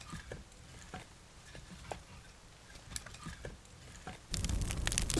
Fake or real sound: real